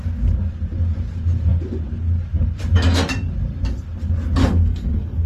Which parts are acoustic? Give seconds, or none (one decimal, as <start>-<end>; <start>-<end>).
0.0-4.4